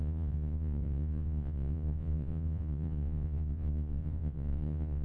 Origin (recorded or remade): remade